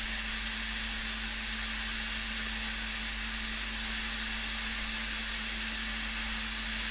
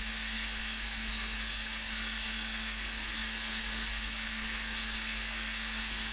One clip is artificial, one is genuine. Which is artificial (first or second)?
second